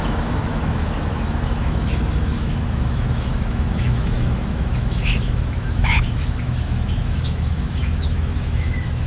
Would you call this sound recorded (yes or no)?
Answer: no